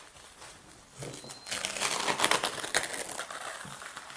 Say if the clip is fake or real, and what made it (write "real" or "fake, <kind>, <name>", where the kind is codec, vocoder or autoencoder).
real